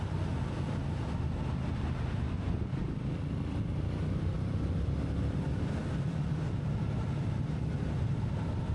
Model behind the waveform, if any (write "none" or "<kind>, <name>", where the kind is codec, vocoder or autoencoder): vocoder, BigVGAN v2